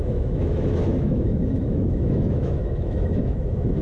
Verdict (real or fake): fake